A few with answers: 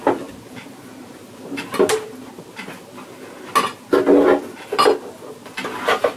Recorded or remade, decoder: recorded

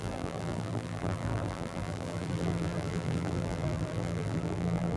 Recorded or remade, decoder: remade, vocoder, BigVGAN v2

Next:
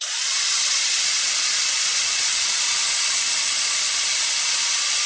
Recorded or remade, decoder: remade, vocoder, Vocos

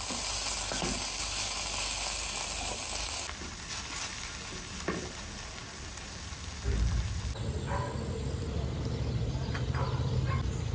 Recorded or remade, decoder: recorded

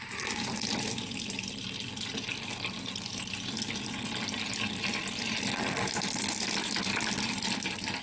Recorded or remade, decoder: recorded